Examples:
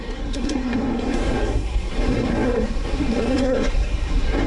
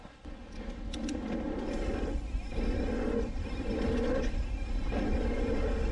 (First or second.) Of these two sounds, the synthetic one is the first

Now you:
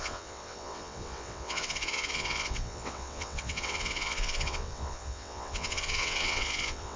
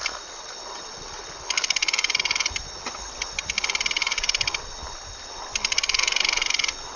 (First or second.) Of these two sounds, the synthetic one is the first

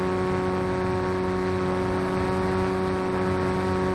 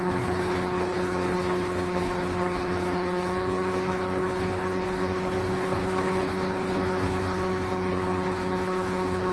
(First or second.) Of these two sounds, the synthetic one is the second